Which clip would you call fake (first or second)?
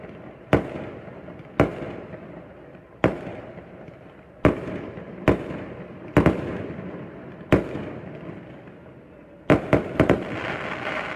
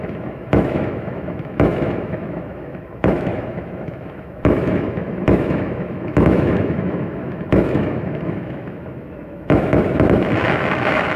second